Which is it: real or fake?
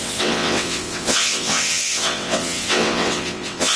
fake